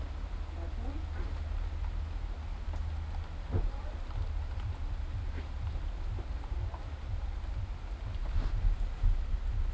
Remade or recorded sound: recorded